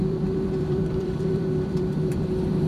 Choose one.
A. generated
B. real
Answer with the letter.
A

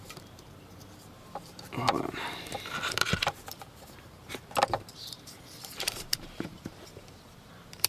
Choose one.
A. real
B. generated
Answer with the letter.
B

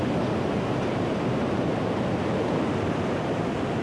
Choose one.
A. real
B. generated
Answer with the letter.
B